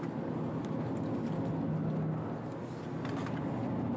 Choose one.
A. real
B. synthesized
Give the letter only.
A